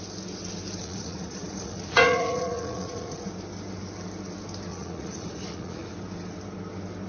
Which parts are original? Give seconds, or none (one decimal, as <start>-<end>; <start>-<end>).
0.0-0.8; 3.3-4.7; 5.9-7.1